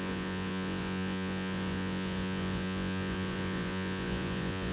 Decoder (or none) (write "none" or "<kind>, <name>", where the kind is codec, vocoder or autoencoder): vocoder, Vocos